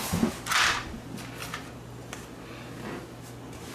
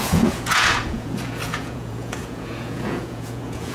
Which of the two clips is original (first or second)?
first